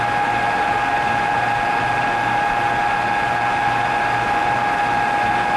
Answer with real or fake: real